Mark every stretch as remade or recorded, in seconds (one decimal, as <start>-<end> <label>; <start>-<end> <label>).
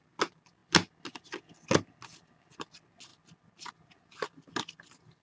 0.0-5.2 recorded